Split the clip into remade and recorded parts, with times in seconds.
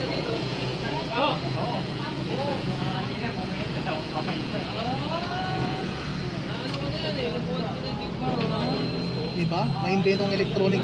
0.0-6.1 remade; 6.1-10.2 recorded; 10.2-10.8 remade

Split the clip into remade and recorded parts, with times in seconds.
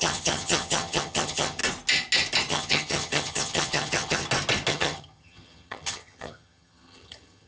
0.0-1.6 remade; 1.6-2.5 recorded; 2.5-4.2 remade; 4.2-4.7 recorded; 4.7-7.5 remade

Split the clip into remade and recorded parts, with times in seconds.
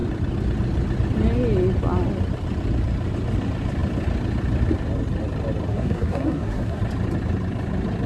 0.0-5.7 recorded; 5.7-6.8 remade; 6.8-8.1 recorded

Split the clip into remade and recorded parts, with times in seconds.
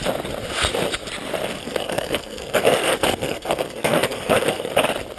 0.0-1.6 recorded; 1.6-4.7 remade; 4.7-5.2 recorded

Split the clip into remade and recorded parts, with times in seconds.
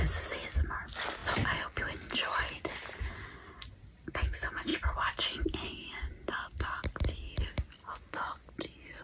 0.0-7.8 recorded; 7.8-8.6 remade; 8.6-9.0 recorded